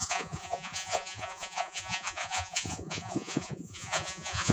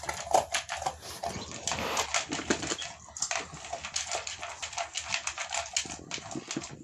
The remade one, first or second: first